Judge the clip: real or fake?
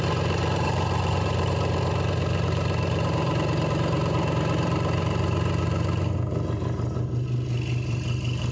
fake